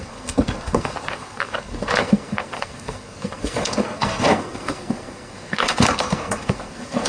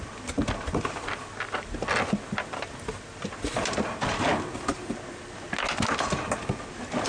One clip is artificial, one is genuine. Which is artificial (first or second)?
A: first